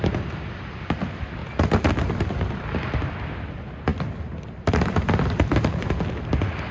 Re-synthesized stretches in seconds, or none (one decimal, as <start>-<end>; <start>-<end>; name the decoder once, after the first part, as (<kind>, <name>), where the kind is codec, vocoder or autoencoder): none